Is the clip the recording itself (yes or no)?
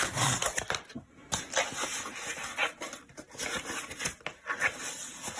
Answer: yes